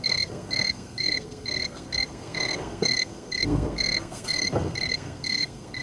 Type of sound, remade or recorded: remade